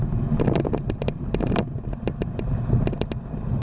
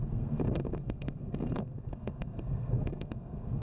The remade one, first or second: second